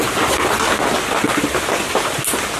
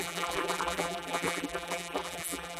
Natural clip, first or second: first